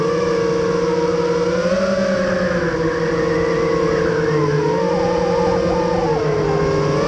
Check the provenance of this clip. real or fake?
real